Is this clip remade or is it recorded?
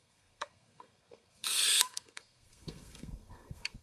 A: remade